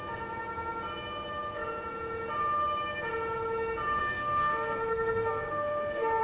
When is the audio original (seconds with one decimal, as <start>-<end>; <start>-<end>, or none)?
0.0-4.0